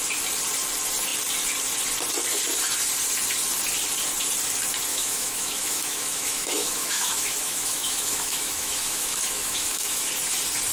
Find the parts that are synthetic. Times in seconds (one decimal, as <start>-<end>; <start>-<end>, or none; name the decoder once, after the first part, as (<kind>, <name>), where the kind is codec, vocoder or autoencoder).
4.9-10.1 (autoencoder, DAC-VAE)